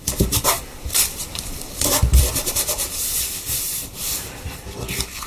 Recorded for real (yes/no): no